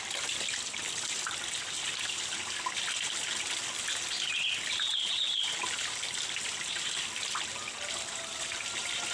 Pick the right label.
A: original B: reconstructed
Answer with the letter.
A